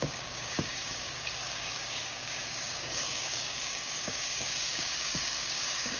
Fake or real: fake